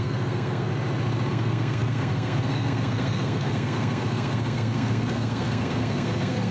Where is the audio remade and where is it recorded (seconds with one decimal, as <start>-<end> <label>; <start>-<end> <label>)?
0.0-0.7 remade; 0.7-1.3 recorded; 1.3-6.5 remade